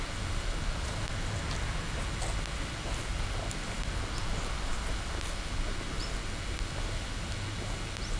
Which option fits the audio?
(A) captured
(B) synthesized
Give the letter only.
A